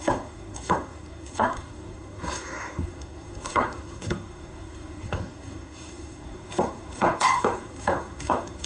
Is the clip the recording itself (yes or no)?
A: no